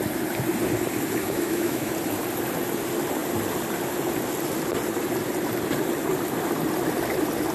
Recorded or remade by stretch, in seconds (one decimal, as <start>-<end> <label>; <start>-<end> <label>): 0.0-1.2 recorded; 1.2-1.9 remade; 1.9-7.5 recorded